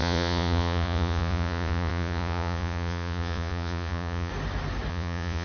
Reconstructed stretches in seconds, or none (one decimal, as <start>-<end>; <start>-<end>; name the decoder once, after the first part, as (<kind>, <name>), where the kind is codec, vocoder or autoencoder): 0.0-4.3 (vocoder, Vocos); 4.9-5.4